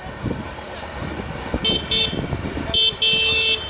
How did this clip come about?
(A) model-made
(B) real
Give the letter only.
B